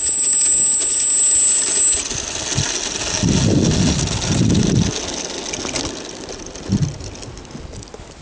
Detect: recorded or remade recorded